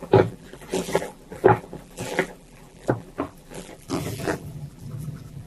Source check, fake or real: fake